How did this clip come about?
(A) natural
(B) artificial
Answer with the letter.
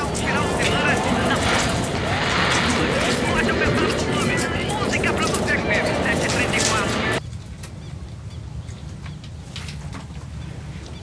A